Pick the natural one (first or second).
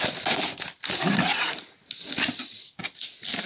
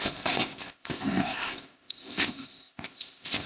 first